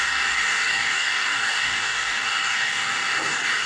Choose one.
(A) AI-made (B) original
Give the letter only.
A